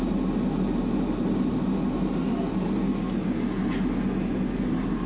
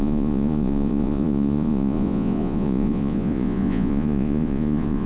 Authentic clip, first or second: first